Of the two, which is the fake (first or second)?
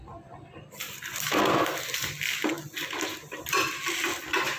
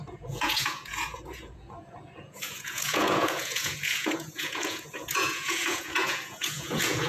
second